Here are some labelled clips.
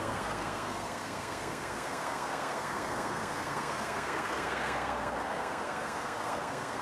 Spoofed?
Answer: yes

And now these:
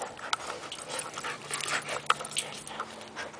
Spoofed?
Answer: no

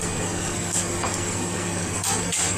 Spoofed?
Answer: yes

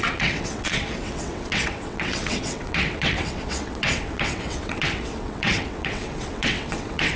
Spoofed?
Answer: yes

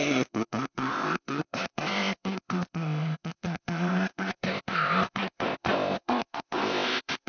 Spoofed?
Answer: yes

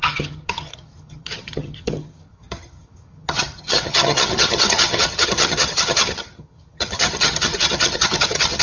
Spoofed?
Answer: yes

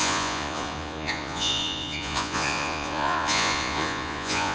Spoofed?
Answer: yes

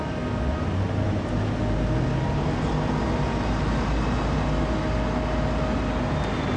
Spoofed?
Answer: no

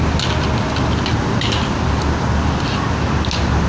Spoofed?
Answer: no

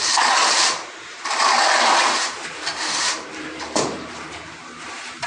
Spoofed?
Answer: yes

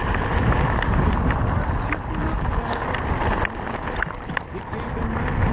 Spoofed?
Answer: no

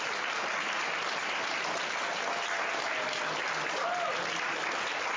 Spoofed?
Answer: no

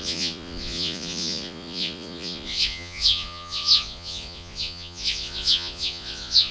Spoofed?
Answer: yes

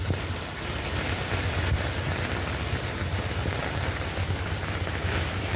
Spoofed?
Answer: no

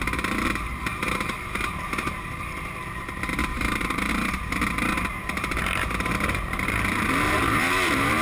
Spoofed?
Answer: yes